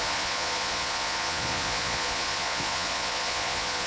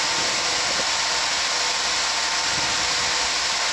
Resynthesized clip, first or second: first